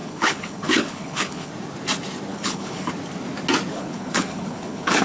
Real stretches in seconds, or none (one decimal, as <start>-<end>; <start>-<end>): 1.5-2.3; 2.9-3.7